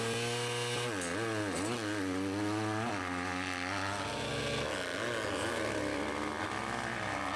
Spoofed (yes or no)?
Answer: no